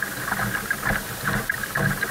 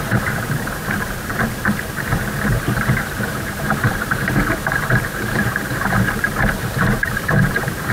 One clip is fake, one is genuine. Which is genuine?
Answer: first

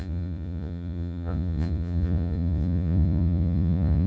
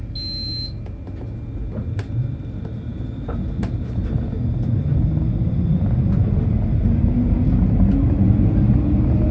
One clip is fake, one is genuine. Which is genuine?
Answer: second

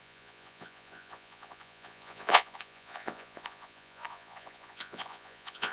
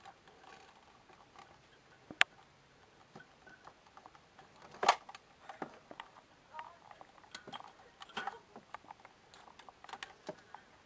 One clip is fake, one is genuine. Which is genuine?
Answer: second